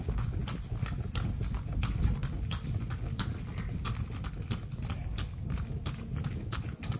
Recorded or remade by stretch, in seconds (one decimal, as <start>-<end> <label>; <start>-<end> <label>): 0.0-7.0 recorded